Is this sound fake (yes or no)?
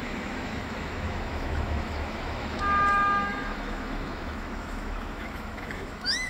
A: yes